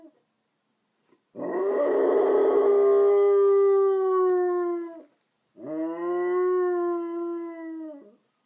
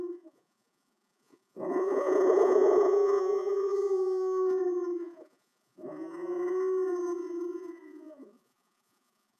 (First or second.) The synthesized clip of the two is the second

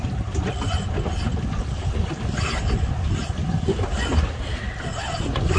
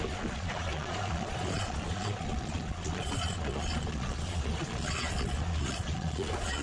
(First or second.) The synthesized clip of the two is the second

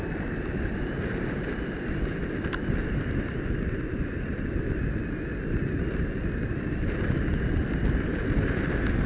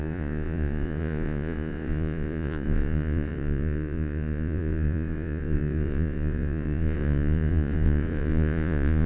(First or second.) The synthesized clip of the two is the second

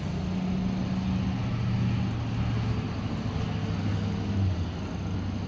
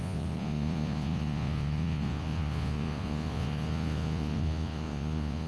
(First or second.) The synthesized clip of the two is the second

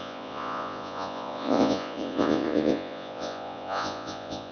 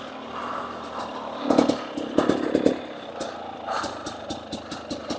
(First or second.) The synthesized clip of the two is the first